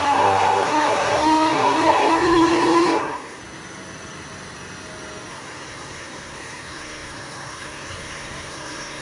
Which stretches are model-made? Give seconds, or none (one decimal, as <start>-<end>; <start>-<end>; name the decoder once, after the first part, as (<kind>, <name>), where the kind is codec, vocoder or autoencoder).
0.0-3.4 (codec, SNAC); 5.3-9.0